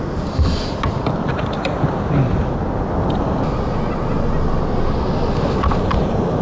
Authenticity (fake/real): real